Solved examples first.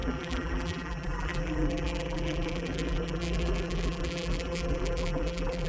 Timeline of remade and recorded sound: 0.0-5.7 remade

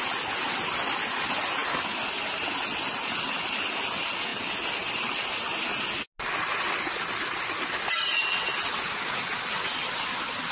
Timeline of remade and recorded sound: 0.0-10.5 recorded

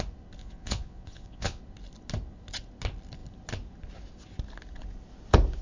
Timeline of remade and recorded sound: 0.0-0.4 recorded; 0.4-1.6 remade; 1.6-5.6 recorded

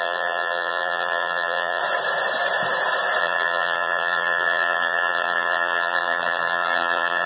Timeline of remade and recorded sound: 0.0-1.8 remade; 1.8-3.2 recorded; 3.2-7.3 remade

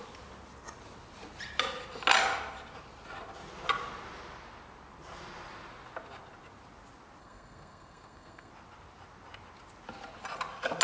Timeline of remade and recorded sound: 0.0-7.2 recorded; 7.2-8.5 remade; 8.5-10.8 recorded

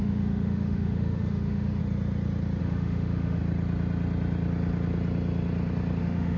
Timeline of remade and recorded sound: 0.0-1.8 remade; 1.8-2.6 recorded; 2.6-3.4 remade; 3.4-6.0 recorded; 6.0-6.4 remade

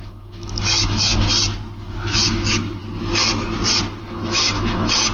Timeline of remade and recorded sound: 0.0-1.1 remade; 1.1-1.9 recorded; 1.9-2.8 remade; 2.8-4.0 recorded; 4.0-5.1 remade